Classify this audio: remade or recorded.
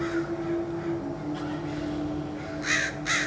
recorded